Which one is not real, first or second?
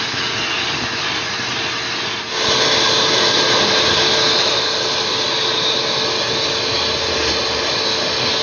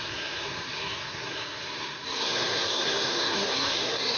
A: second